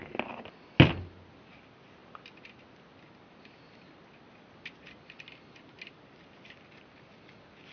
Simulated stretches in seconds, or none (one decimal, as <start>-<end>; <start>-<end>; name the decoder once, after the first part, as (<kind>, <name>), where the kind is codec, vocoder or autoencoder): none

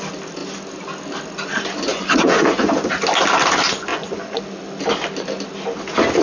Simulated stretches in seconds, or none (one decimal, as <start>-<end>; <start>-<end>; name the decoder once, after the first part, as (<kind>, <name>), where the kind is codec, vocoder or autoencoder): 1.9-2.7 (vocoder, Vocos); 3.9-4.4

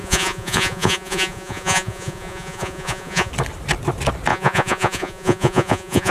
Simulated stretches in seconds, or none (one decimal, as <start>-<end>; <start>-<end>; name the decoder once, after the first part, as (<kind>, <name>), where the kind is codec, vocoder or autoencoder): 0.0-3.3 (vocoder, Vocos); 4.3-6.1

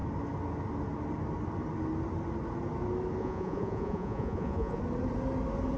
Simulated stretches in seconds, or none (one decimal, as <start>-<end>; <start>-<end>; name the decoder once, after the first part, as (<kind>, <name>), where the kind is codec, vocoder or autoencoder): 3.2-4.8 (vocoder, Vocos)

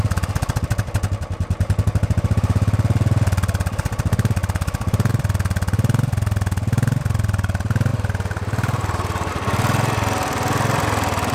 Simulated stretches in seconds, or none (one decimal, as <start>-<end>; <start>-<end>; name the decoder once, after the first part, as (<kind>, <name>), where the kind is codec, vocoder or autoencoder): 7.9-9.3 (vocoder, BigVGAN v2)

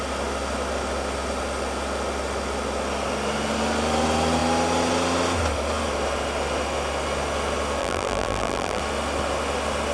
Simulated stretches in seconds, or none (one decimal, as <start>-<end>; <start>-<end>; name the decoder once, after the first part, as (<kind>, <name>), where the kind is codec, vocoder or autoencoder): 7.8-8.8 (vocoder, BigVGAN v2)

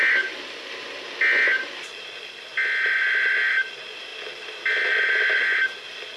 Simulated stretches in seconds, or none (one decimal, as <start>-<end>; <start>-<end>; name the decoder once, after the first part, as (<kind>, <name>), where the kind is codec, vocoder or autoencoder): none